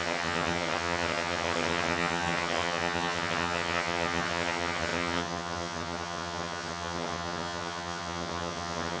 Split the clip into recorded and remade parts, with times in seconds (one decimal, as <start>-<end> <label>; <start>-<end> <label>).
0.0-9.0 remade